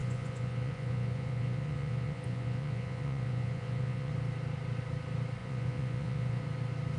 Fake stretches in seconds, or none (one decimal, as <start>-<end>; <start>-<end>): 0.0-4.1; 5.4-6.4